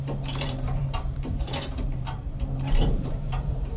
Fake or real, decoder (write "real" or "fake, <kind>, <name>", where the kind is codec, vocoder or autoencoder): fake, vocoder, BigVGAN v2